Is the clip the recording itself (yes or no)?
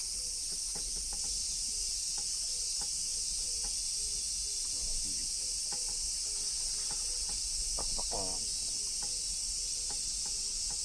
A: yes